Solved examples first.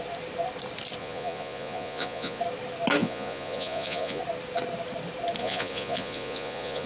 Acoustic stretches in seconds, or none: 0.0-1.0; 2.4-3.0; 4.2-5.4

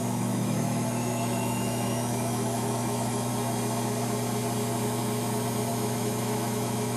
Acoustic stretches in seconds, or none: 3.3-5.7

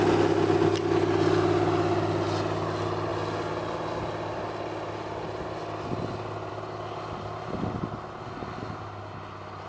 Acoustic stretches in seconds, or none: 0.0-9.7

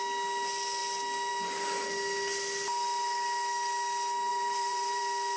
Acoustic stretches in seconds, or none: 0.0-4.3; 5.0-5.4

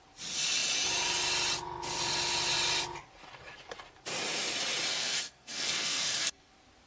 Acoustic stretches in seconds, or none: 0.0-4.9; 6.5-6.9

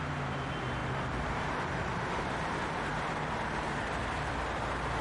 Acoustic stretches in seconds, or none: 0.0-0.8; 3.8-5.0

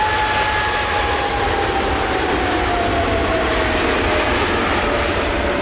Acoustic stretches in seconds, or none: 0.0-5.6